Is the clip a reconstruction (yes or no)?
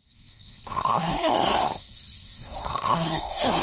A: yes